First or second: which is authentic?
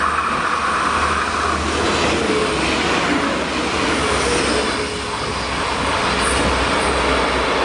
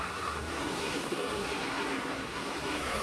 first